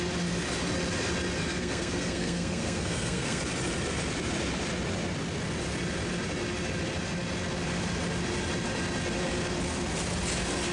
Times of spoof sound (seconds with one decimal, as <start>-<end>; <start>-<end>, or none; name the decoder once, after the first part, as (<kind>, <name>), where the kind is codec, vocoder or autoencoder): 1.4-3.4 (codec, SNAC)